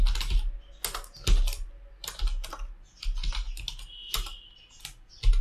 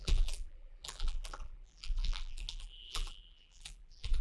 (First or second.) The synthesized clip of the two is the second